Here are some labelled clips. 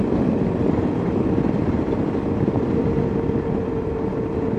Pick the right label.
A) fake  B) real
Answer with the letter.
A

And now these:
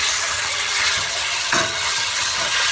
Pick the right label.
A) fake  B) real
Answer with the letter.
A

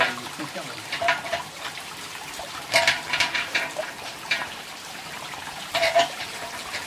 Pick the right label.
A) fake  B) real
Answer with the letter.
A